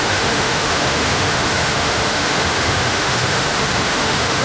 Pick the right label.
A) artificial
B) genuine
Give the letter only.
A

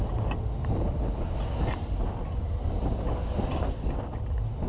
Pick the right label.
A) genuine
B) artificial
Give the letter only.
A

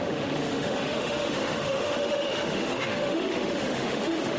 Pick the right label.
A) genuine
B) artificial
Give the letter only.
B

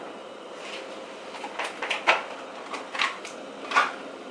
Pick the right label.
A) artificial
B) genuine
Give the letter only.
B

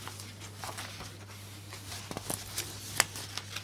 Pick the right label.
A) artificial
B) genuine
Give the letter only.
B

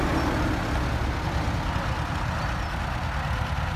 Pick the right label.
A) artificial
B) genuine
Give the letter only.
B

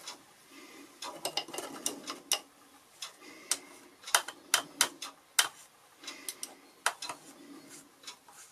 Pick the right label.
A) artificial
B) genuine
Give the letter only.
B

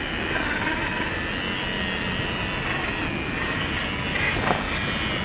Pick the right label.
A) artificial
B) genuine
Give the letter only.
B